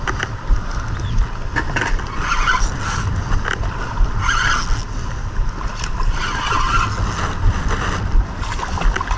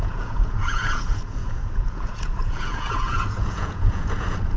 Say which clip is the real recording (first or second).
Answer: first